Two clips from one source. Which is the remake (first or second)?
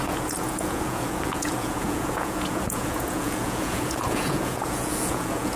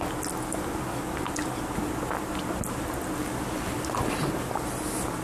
first